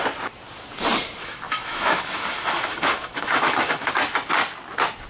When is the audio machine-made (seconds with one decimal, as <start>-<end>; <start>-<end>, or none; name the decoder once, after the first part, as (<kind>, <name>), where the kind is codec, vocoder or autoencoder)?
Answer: 1.2-3.9 (autoencoder, DAC-VAE)